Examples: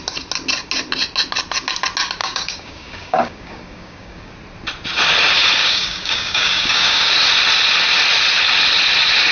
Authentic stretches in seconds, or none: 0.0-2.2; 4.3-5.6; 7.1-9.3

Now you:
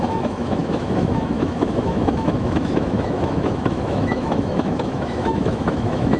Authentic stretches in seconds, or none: none

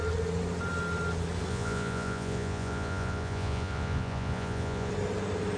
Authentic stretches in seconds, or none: 0.0-1.5; 4.9-5.6

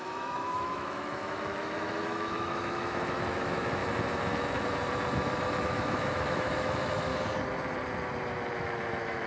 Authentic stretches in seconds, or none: 3.8-5.6; 7.1-8.6

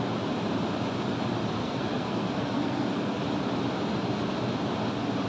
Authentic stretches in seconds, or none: 0.0-1.6; 3.2-5.3

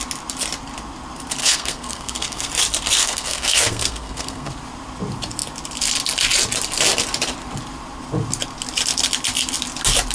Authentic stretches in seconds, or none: 0.0-1.4; 2.5-3.0; 4.5-10.1

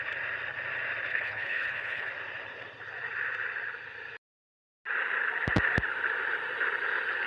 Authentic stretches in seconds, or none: 0.0-1.1; 2.1-7.3